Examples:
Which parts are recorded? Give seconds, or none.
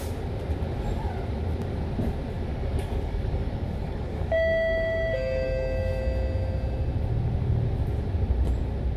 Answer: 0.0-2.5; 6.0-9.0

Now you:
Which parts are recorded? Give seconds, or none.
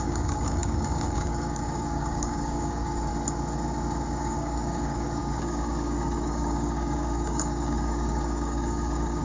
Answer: 3.1-4.2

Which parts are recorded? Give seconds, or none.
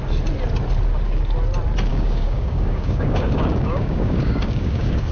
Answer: 0.0-1.9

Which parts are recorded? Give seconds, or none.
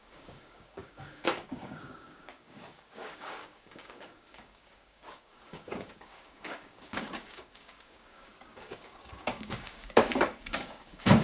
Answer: none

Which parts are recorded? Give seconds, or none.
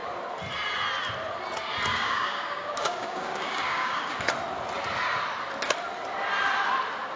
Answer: 0.0-1.9; 4.1-7.2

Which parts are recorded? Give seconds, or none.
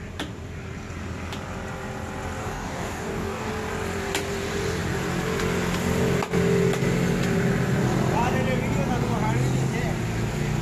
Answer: 0.0-2.4; 3.5-10.6